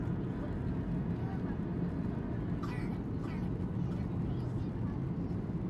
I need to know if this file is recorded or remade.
recorded